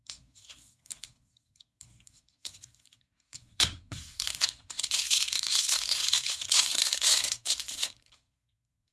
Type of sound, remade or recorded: remade